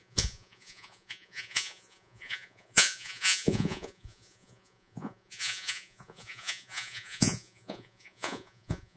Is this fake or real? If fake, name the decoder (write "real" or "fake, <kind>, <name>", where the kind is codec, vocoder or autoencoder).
fake, vocoder, Vocos